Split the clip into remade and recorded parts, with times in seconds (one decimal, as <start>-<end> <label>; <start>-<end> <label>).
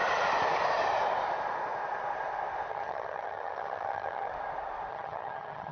0.0-2.7 recorded; 2.7-4.3 remade; 4.3-4.9 recorded; 4.9-5.7 remade